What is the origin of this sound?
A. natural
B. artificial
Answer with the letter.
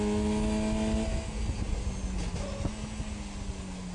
A